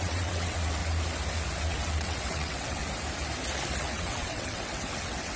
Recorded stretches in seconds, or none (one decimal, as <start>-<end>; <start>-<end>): 0.8-1.6; 2.8-3.8